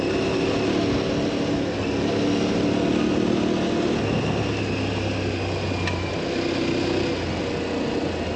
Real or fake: real